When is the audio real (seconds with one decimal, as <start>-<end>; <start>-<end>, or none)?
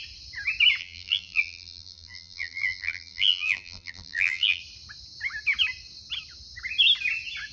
0.0-0.8; 4.6-7.5